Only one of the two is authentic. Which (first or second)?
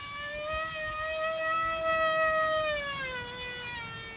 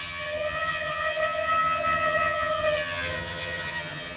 first